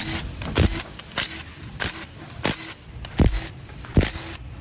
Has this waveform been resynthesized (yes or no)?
no